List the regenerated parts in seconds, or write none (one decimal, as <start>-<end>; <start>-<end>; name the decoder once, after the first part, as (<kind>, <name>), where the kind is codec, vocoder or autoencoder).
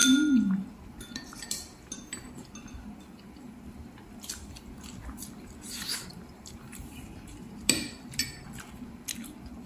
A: 6.1-7.9 (vocoder, BigVGAN v2)